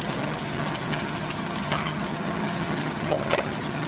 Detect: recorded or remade remade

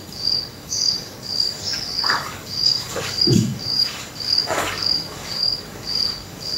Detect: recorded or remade remade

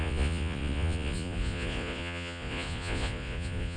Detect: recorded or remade remade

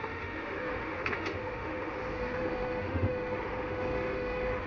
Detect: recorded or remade remade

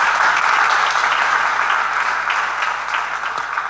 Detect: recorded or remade recorded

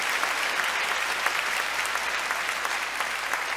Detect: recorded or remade recorded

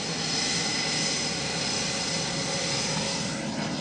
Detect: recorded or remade recorded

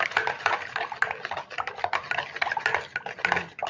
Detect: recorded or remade recorded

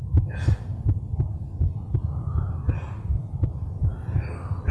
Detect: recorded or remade recorded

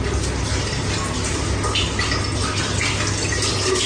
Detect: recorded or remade recorded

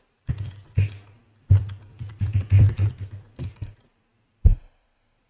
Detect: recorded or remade remade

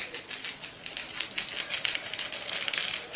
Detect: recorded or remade recorded